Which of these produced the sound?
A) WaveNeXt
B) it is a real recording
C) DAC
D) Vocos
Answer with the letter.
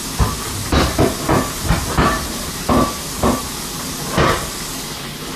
B